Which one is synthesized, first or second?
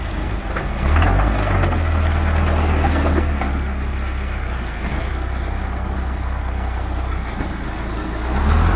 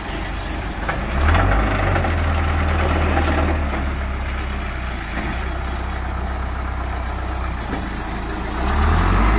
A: first